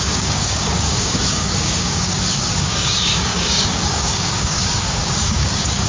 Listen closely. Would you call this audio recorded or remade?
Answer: remade